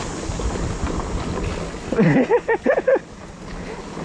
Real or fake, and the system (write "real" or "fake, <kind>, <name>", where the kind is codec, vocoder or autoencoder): real